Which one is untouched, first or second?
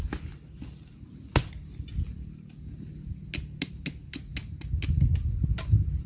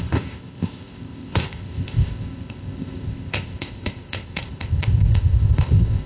first